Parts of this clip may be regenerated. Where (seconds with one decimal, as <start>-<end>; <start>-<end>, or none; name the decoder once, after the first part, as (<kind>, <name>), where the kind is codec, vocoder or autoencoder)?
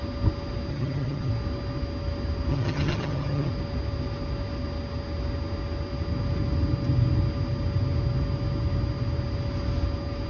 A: 0.7-1.3 (vocoder, HiFi-GAN); 2.5-3.5